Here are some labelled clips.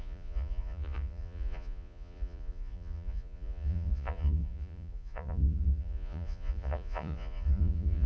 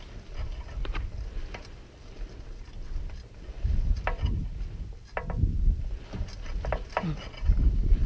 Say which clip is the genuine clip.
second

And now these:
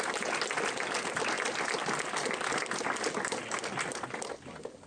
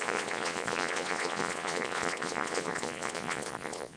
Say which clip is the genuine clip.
first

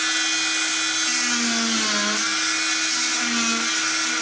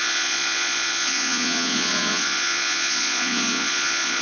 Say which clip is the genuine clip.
first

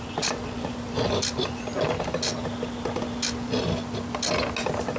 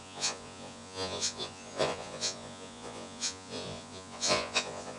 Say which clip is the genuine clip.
first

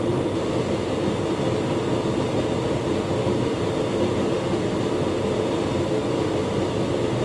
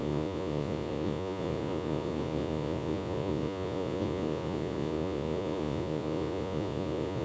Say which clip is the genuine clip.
first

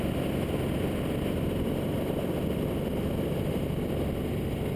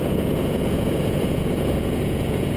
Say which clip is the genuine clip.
first